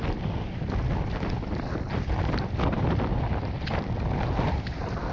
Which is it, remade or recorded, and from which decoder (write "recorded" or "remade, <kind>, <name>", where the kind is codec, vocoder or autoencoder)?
recorded